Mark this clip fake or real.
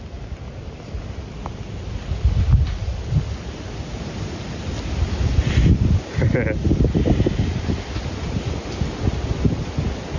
real